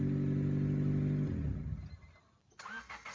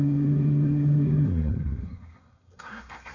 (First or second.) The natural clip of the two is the first